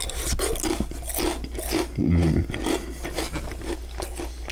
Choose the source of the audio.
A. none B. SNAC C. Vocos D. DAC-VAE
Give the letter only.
A